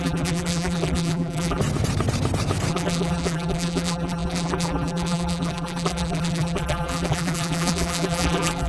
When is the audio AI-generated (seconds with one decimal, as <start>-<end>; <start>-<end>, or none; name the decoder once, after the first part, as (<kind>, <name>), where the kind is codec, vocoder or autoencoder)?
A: 0.0-1.6 (vocoder, BigVGAN v2); 2.7-8.7